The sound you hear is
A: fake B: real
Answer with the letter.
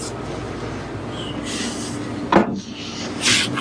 B